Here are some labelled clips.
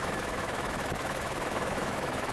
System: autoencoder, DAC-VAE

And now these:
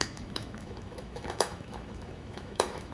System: autoencoder, DAC-VAE